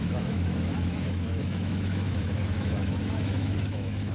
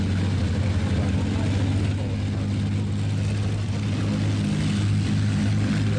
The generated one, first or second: first